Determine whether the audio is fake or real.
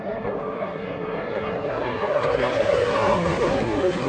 fake